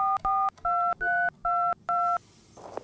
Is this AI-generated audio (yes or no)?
no